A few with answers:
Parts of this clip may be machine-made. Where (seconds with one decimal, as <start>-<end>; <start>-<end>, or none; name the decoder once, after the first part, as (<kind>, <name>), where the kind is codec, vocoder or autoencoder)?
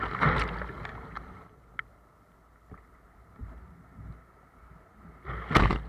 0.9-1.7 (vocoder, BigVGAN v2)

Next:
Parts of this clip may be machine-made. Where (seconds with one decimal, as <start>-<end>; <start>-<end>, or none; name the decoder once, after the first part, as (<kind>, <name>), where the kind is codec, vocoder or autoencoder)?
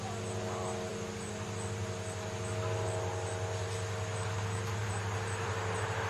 4.8-6.1 (vocoder, BigVGAN v2)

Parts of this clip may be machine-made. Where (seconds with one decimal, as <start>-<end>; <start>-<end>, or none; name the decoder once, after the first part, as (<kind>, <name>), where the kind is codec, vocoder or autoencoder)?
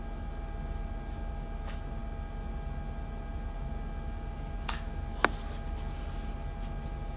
none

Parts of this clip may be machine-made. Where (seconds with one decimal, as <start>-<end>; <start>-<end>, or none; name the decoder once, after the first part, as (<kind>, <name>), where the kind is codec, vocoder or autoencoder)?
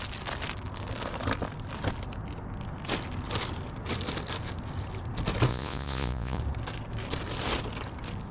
5.5-6.4 (vocoder, Vocos)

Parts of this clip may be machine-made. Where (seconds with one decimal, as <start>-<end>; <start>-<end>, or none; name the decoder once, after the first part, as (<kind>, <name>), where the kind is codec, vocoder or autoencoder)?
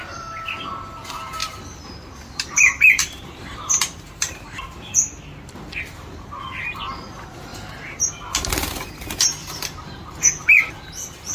1.4-4.6 (vocoder, BigVGAN v2); 7.5-8.1; 9.4-11.3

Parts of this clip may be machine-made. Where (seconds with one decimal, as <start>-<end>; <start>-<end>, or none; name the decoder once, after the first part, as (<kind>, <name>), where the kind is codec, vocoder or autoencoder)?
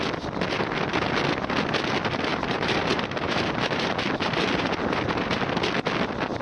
2.3-5.5 (vocoder, BigVGAN v2)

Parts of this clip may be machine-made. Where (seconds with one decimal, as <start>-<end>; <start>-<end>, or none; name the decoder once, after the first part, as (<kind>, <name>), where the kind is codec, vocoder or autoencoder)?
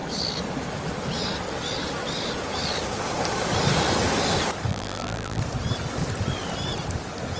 4.7-5.4 (vocoder, BigVGAN v2)